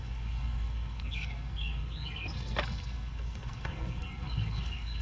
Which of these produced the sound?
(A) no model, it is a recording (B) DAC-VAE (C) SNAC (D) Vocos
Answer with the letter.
C